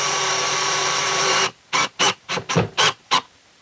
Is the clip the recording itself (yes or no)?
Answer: no